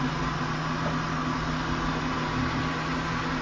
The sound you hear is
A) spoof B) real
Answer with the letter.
B